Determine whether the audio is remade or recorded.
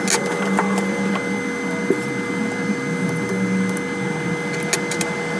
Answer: recorded